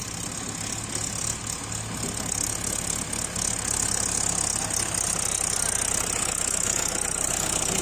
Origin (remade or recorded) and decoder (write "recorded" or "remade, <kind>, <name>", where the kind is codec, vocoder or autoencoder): recorded